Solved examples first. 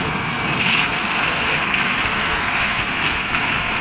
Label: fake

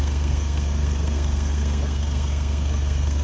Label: fake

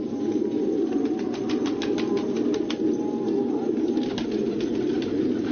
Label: real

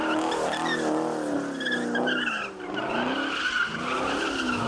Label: real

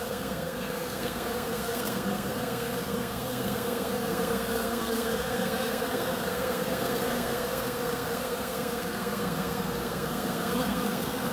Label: fake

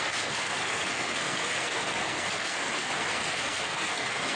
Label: fake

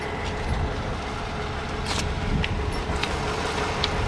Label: real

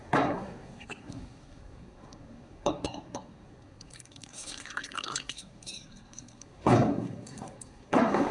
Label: fake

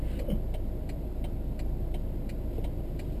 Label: real